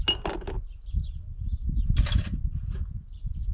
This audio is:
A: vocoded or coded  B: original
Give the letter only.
B